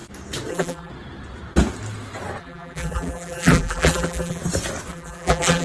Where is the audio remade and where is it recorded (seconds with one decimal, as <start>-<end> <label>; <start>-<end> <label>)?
0.0-0.5 recorded; 0.5-0.9 remade; 0.9-2.4 recorded; 2.4-4.4 remade; 4.4-4.9 recorded; 4.9-5.6 remade